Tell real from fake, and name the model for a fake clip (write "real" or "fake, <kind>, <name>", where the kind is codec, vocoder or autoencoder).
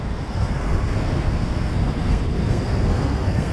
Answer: fake, codec, SNAC